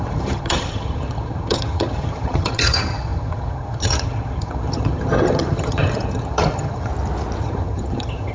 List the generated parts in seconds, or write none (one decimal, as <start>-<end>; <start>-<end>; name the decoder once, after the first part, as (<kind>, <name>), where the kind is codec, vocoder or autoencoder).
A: 0.0-6.9 (vocoder, HiFi-GAN); 7.4-8.3